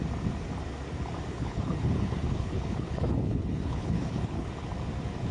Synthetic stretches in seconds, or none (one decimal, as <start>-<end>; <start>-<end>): 1.3-4.5